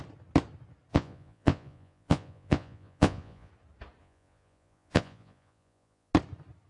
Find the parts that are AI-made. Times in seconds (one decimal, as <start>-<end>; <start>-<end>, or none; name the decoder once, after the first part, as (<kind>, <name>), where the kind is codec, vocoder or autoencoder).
0.9-3.5 (vocoder, Vocos); 4.0-6.1